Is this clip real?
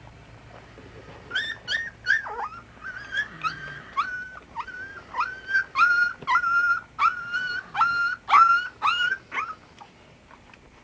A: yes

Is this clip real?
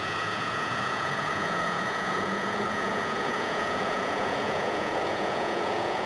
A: no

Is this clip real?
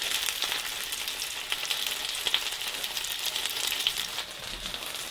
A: yes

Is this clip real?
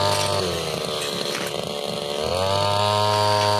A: yes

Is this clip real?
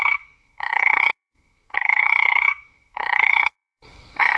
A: no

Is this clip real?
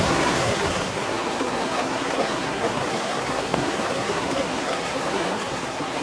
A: no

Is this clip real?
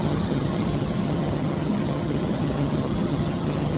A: no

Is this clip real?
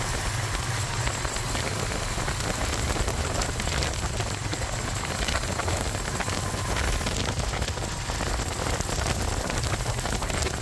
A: yes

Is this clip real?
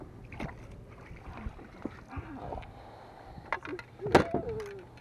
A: yes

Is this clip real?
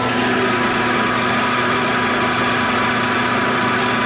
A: yes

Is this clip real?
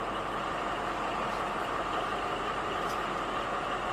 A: yes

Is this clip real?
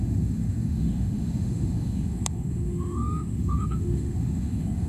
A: no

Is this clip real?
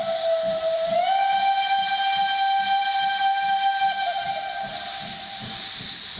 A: no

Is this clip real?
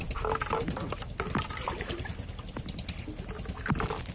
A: yes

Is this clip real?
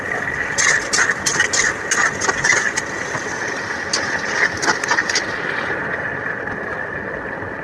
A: yes